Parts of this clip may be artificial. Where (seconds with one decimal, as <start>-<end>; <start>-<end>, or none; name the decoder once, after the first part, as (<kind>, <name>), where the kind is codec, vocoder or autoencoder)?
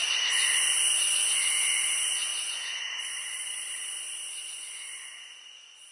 2.3-5.9 (vocoder, Vocos)